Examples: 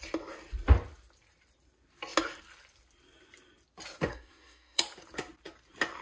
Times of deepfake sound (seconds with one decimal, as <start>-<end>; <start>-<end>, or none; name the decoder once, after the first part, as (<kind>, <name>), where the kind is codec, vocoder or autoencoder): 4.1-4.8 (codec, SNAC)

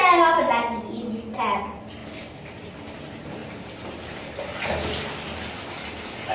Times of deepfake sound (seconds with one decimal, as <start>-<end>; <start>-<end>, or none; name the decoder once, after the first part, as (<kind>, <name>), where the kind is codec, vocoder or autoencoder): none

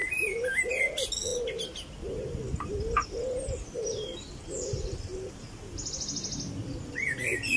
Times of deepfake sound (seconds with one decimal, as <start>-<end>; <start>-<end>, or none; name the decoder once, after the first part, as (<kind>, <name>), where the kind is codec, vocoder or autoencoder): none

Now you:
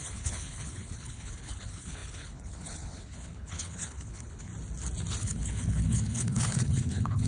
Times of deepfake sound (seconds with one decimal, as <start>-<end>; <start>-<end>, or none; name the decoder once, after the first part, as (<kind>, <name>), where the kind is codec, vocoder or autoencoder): 0.0-4.5 (codec, HILCodec); 5.2-7.3

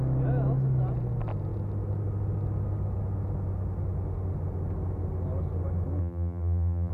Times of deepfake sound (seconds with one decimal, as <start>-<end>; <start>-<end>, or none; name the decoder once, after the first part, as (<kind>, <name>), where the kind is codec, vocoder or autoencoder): 6.0-6.9 (vocoder, BigVGAN v2)